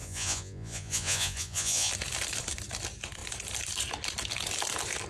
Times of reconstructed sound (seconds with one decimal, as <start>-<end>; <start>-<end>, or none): 0.0-1.9